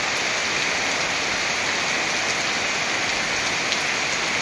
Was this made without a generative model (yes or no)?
yes